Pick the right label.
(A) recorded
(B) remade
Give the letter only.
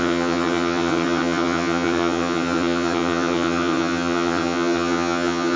B